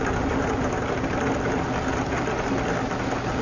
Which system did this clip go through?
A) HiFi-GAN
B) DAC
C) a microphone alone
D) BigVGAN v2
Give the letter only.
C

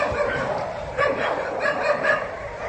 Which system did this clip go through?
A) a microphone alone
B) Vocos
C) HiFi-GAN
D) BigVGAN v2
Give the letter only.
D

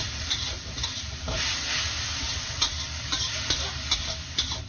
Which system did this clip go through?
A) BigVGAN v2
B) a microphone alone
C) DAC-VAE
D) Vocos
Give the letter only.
B